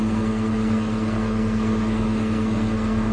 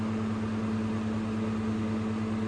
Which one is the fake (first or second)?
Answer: first